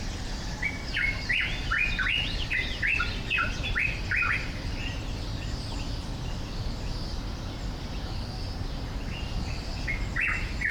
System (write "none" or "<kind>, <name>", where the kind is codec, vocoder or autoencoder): none